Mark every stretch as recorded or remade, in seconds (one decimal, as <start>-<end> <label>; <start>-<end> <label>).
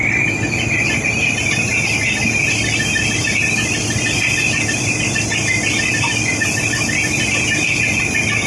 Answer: 0.0-8.5 recorded